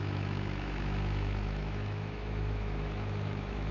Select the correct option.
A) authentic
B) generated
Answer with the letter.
B